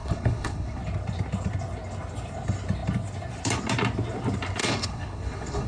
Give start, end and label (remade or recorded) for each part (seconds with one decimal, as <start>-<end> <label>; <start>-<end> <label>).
0.0-0.8 remade; 0.8-4.6 recorded; 4.6-5.7 remade